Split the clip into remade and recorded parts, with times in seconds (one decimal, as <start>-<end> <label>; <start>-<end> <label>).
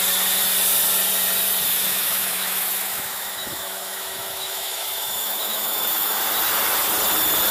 0.0-1.7 recorded; 1.7-6.2 remade; 6.2-7.5 recorded